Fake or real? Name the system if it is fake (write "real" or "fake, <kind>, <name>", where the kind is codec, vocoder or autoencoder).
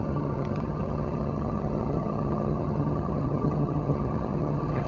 fake, vocoder, HiFi-GAN